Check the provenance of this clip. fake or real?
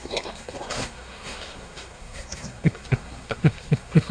fake